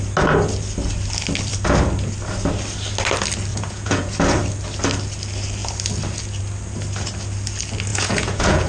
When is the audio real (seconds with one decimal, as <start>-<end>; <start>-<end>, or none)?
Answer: 0.0-3.5; 4.1-7.9